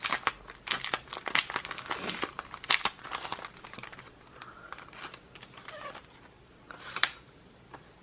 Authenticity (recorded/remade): remade